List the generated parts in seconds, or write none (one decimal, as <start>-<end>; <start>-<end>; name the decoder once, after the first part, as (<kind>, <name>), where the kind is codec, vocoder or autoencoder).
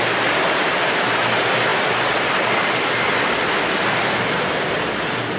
none